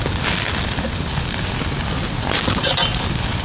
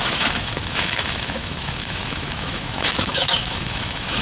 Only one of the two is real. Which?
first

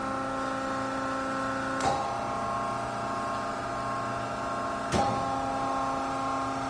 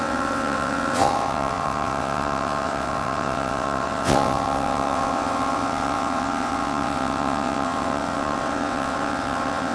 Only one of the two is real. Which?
first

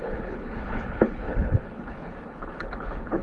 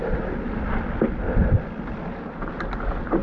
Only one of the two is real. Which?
second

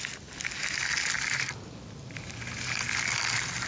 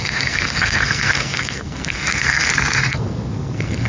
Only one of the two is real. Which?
first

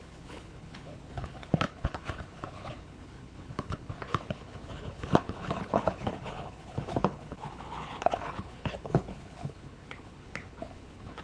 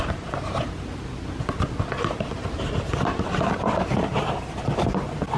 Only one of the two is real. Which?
second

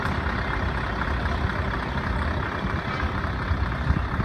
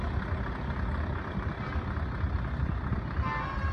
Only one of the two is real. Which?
second